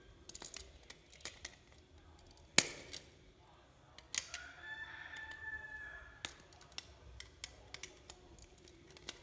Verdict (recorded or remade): recorded